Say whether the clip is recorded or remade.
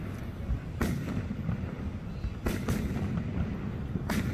recorded